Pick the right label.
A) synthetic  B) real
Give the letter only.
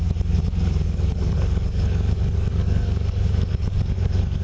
A